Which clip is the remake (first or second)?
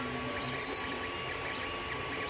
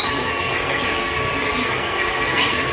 second